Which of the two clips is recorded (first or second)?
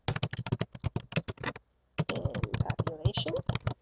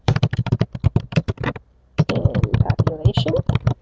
first